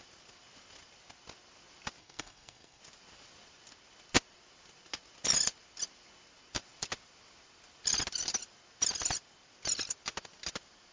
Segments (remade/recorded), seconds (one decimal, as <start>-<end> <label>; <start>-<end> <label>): 0.0-2.0 recorded; 2.0-2.8 remade; 2.8-10.9 recorded